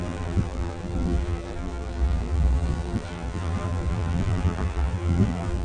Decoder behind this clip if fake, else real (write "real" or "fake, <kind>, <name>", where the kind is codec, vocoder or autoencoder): fake, vocoder, BigVGAN v2